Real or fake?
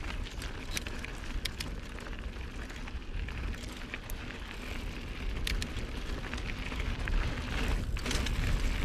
real